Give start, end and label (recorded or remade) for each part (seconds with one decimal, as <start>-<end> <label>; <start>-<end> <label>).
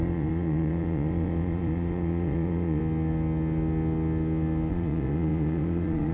0.0-2.8 remade; 2.8-4.7 recorded; 4.7-6.1 remade